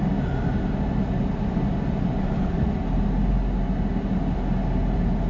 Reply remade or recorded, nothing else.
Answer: recorded